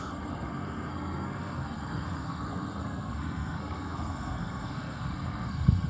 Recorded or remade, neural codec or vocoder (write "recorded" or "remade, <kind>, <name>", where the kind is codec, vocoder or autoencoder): remade, codec, SNAC